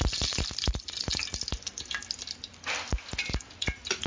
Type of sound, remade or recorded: recorded